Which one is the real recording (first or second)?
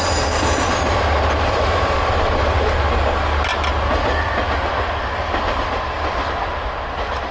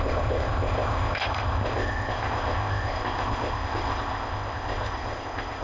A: first